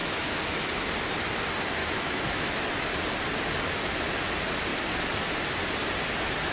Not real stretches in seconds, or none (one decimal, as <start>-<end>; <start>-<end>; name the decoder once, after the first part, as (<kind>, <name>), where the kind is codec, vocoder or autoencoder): 0.0-0.7 (autoencoder, DAC-VAE); 1.8-2.5